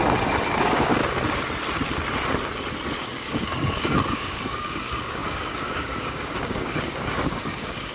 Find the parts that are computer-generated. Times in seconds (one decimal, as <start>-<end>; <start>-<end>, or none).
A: 0.6-1.0; 3.0-7.9